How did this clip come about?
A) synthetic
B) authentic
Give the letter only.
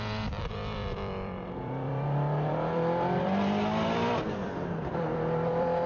A